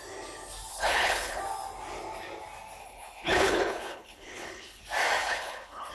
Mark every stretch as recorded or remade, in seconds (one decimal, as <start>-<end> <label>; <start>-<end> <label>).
0.0-0.7 recorded; 0.7-1.4 remade; 1.4-2.8 recorded; 2.8-4.8 remade; 4.8-5.2 recorded; 5.2-5.9 remade